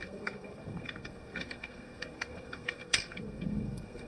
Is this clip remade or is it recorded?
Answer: remade